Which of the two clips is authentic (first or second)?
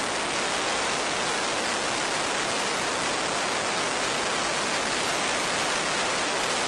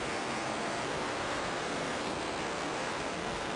first